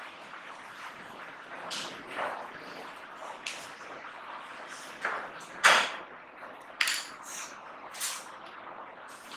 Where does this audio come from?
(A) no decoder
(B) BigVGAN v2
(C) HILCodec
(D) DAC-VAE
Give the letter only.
B